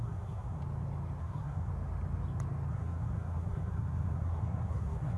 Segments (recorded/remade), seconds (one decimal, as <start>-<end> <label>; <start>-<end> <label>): 0.0-0.6 remade; 0.6-1.2 recorded; 1.2-1.7 remade; 1.7-2.7 recorded; 2.7-5.2 remade